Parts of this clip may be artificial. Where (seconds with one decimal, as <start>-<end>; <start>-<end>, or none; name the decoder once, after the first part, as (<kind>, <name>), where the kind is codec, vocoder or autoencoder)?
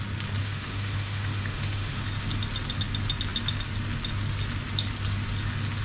0.4-2.0 (autoencoder, DAC-VAE)